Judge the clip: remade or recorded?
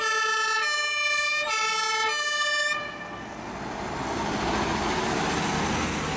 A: recorded